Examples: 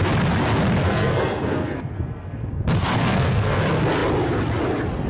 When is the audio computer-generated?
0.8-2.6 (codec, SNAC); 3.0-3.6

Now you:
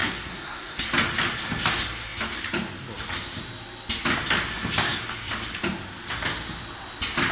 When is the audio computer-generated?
0.0-0.8 (codec, SNAC)